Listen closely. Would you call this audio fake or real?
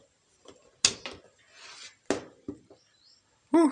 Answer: real